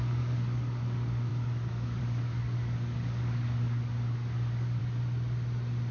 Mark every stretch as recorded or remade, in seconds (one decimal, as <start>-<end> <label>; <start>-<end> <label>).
0.0-4.8 remade; 4.8-5.9 recorded